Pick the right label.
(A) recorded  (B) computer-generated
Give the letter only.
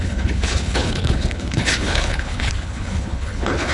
B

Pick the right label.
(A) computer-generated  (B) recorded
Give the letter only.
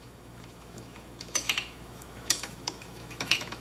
A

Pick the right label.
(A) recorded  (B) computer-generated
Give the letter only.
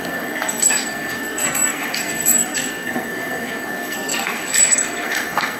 B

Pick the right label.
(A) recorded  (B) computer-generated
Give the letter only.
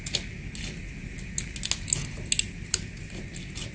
A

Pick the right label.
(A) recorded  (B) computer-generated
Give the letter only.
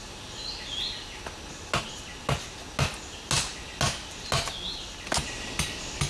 A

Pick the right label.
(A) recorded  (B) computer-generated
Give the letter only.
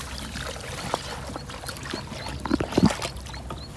A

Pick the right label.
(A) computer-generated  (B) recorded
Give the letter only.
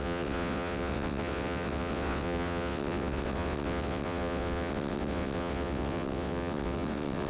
A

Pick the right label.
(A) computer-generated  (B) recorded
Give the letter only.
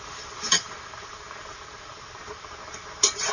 A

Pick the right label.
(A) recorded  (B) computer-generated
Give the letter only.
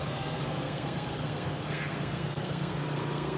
B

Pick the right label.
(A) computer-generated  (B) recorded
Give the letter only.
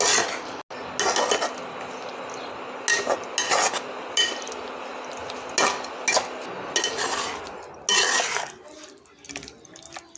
B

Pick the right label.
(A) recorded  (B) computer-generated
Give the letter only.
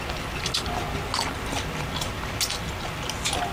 A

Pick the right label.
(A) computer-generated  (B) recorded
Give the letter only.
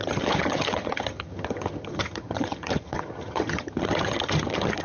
A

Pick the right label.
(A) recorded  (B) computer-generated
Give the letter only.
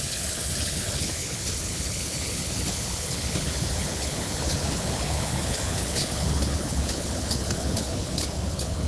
B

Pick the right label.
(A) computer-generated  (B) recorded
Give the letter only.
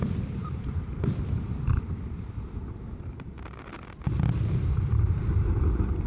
B